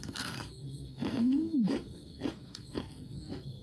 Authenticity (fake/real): fake